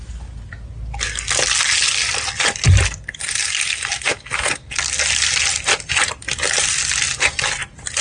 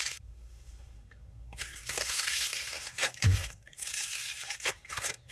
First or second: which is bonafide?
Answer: first